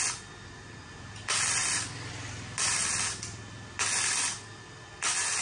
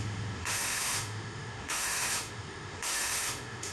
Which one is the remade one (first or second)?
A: second